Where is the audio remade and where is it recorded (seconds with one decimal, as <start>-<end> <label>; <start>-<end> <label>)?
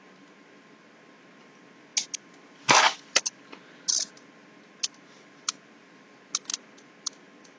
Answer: 0.0-7.6 recorded